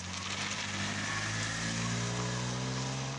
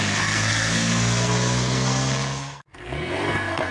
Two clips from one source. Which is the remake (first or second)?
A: second